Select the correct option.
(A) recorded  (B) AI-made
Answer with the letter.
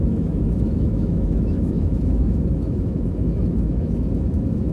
B